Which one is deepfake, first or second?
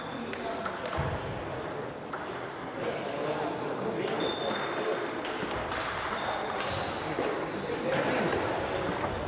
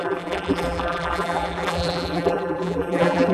second